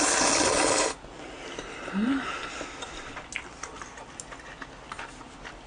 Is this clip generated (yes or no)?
no